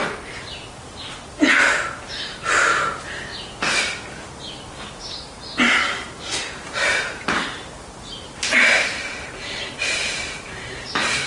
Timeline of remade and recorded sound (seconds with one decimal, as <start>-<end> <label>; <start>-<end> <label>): 0.0-3.3 remade; 3.3-4.7 recorded; 4.7-11.3 remade